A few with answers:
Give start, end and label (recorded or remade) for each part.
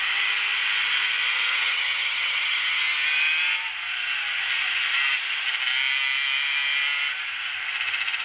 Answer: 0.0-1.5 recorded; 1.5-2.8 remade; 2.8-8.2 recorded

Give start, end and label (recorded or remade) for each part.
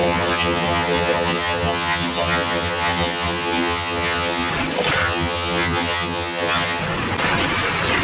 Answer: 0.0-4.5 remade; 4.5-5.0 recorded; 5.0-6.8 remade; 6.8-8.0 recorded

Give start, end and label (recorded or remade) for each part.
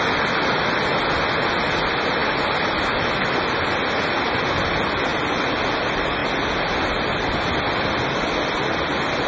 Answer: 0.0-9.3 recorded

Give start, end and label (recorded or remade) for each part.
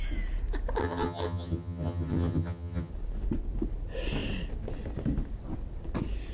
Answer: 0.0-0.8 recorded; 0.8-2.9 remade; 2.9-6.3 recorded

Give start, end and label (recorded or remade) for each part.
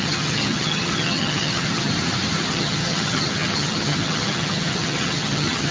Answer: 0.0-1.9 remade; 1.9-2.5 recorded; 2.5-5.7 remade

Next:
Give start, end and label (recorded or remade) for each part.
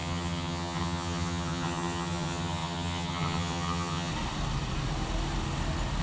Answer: 0.0-4.1 remade; 4.1-6.0 recorded